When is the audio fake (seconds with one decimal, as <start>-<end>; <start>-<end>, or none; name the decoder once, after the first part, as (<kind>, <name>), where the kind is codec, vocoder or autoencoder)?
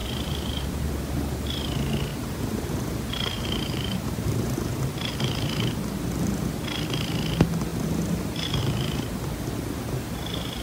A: 0.0-0.9 (vocoder, BigVGAN v2); 2.1-5.1; 7.7-8.6